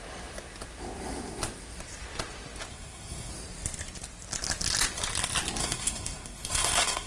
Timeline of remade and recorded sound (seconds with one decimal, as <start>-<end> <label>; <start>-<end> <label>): 0.0-2.7 recorded; 2.7-3.3 remade; 3.3-5.6 recorded; 5.6-7.1 remade